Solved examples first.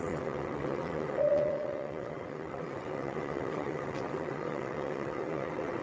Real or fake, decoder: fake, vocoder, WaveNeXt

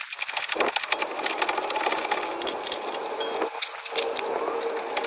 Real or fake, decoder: real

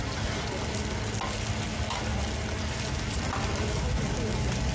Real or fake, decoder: real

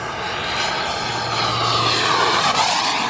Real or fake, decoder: real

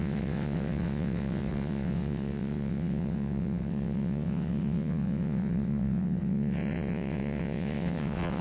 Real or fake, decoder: fake, vocoder, WaveNeXt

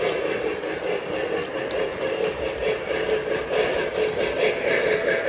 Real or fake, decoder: real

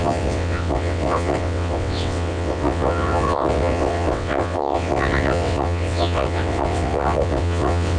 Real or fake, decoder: fake, vocoder, WaveNeXt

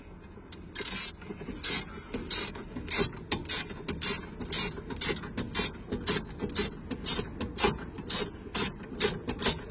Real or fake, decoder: real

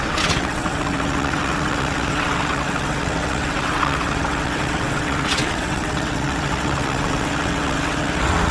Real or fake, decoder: fake, vocoder, WaveNeXt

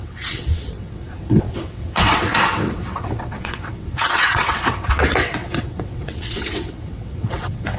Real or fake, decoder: fake, vocoder, WaveNeXt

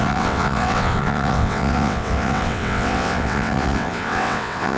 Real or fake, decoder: fake, vocoder, WaveNeXt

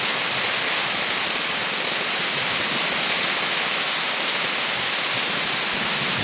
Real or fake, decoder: real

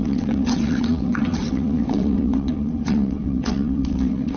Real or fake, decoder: fake, vocoder, WaveNeXt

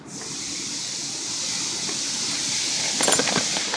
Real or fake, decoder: real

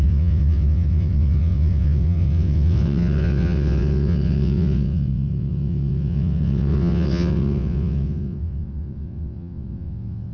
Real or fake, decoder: fake, vocoder, WaveNeXt